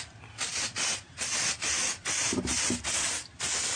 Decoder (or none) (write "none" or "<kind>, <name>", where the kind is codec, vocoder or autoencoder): none